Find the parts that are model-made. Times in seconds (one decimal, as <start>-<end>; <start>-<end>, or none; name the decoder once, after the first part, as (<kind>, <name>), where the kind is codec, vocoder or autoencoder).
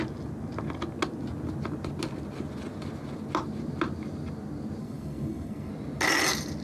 4.8-5.7 (codec, SNAC)